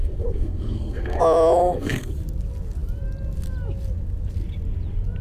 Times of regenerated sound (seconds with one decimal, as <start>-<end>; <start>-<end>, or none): 0.0-1.2; 1.6-2.1